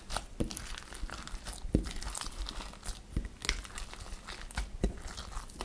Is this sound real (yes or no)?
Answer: yes